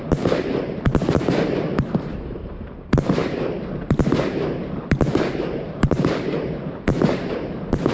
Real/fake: fake